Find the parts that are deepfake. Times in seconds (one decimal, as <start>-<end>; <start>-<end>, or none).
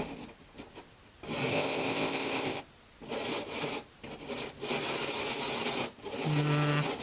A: 1.5-2.6